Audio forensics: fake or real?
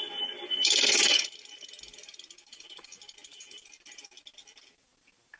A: real